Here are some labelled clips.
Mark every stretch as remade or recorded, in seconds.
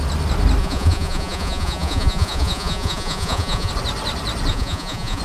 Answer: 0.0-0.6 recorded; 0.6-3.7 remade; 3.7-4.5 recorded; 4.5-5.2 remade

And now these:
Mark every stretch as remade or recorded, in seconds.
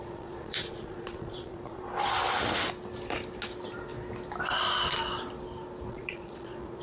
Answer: 0.0-1.9 remade; 1.9-5.9 recorded; 5.9-6.8 remade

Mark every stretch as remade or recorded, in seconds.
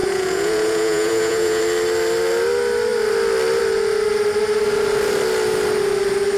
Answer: 0.0-1.6 remade; 1.6-6.4 recorded